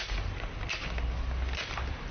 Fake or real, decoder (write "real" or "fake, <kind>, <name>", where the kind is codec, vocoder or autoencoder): real